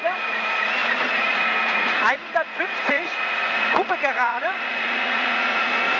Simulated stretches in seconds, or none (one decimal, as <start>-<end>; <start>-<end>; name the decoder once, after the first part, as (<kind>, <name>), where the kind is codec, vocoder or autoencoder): 0.0-6.0 (vocoder, Vocos)